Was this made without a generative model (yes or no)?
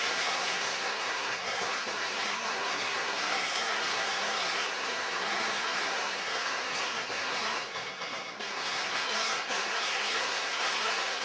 no